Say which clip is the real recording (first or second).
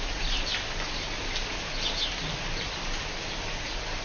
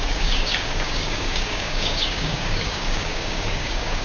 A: first